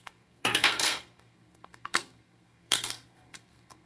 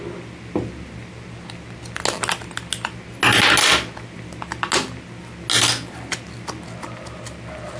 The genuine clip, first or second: second